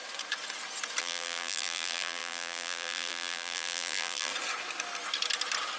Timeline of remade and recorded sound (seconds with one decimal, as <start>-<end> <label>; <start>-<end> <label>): 0.0-1.0 recorded; 1.0-4.3 remade; 4.3-5.8 recorded